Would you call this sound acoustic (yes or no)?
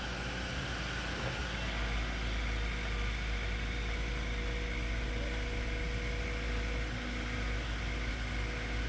yes